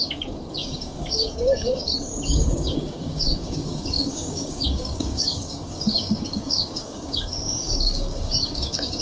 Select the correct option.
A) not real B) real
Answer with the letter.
A